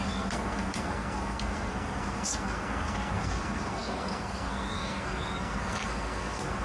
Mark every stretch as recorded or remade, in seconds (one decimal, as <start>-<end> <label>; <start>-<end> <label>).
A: 0.0-6.6 remade